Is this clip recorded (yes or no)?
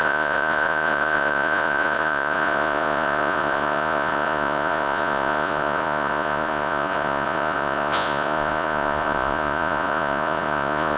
no